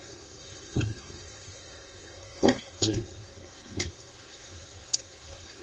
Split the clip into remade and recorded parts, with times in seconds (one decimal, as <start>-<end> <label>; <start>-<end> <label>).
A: 0.0-5.6 remade